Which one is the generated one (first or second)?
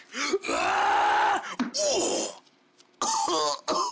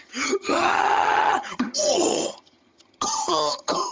second